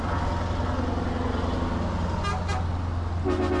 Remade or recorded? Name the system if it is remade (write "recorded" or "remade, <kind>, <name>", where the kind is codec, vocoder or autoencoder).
recorded